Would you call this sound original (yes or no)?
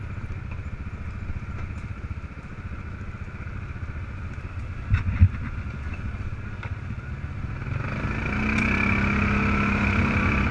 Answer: yes